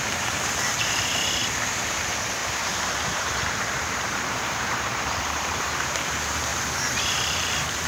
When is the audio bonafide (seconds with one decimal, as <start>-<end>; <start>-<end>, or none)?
1.4-1.9; 6.5-7.0